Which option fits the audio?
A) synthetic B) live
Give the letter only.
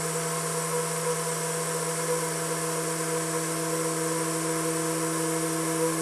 B